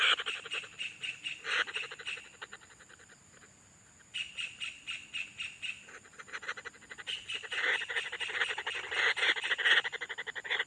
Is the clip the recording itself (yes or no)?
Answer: yes